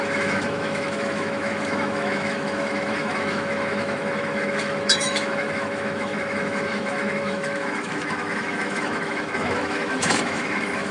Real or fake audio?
fake